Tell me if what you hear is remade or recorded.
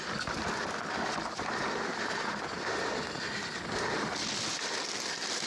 recorded